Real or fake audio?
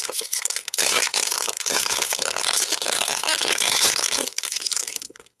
fake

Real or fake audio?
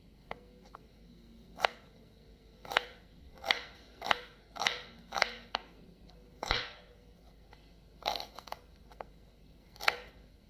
fake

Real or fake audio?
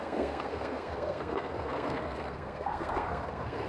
fake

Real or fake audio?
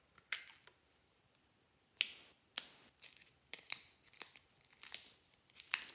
real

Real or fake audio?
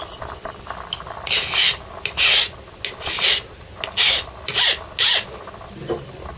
real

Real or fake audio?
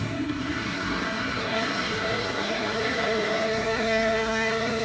fake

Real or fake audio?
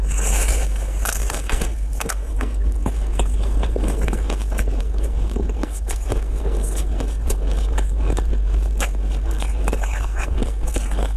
fake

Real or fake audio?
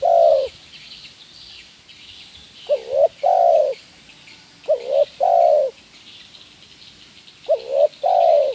real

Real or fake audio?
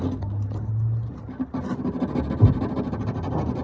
real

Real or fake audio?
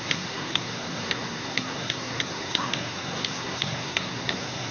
fake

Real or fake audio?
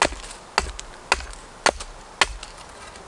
real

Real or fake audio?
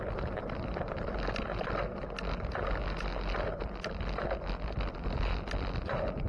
real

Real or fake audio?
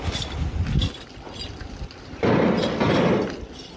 real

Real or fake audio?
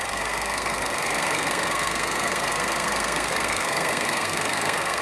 fake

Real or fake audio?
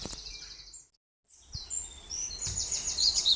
real